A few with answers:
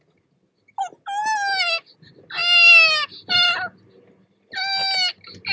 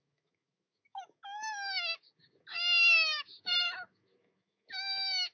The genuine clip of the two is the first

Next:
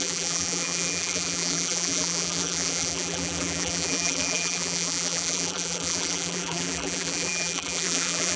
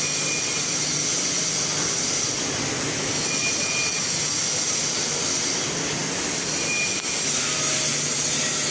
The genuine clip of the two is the second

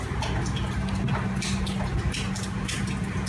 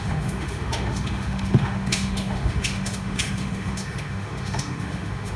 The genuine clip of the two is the first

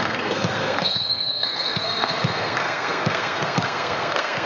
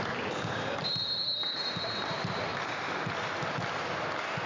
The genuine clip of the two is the second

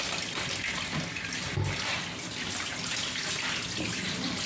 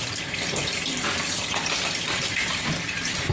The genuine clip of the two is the first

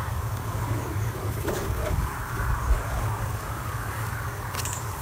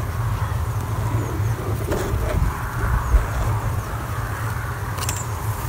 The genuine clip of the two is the second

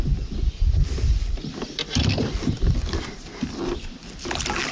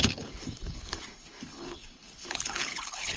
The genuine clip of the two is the first